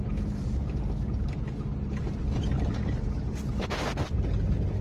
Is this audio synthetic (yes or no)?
no